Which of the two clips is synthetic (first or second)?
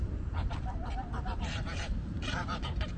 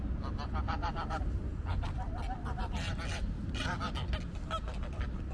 first